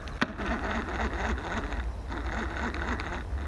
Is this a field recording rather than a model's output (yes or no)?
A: yes